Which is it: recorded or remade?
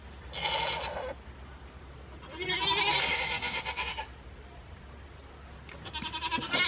recorded